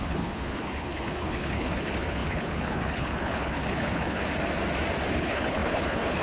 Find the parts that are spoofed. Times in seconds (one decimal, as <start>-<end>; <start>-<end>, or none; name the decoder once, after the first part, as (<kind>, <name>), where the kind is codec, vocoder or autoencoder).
0.0-4.2 (codec, HILCodec); 5.1-6.2